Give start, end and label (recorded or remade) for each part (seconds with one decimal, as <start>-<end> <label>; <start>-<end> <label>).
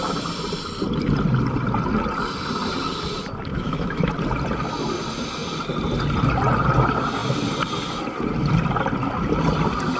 0.0-3.5 recorded; 3.5-4.1 remade; 4.1-10.0 recorded